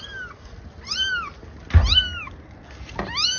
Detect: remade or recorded recorded